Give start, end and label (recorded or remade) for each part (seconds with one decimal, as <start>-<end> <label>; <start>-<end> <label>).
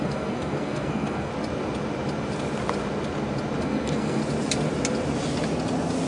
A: 0.0-1.3 remade; 1.3-3.6 recorded; 3.6-4.2 remade; 4.2-6.1 recorded